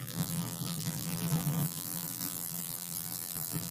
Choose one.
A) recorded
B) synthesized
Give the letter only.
B